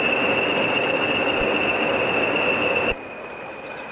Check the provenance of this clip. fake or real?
real